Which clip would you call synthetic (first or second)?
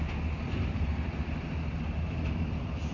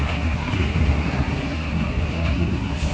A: second